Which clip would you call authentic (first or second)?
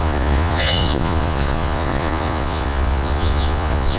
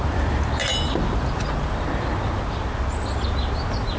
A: second